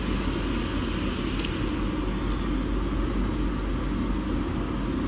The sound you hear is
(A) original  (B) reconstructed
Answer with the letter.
A